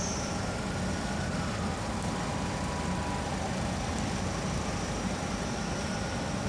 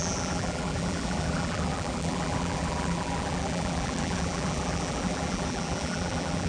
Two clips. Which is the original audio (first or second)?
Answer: first